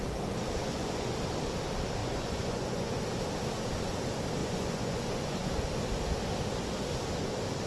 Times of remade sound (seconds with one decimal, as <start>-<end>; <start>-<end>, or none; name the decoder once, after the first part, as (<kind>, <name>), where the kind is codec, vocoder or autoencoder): 0.6-1.1 (vocoder, Vocos); 2.0-3.0; 4.4-5.5